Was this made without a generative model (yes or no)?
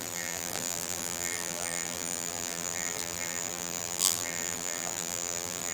no